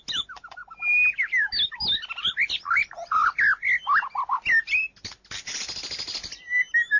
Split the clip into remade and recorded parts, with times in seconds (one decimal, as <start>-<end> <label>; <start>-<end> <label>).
0.0-7.0 recorded